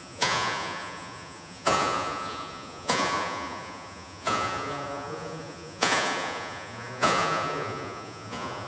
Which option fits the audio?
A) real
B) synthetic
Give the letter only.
B